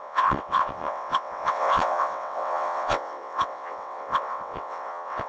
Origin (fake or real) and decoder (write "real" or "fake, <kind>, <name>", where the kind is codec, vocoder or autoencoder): fake, vocoder, WaveNeXt